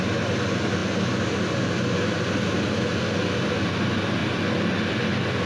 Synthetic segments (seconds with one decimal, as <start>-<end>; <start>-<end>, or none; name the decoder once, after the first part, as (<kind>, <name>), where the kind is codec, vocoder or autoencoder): none